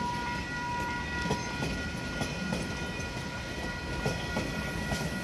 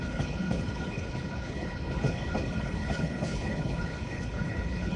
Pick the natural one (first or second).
first